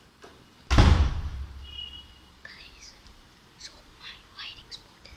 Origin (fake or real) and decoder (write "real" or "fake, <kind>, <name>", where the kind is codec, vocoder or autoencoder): real